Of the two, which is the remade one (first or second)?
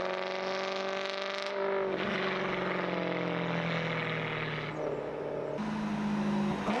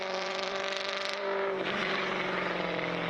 second